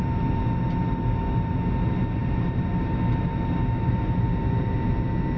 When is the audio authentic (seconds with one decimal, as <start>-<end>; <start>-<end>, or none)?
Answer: 0.0-5.4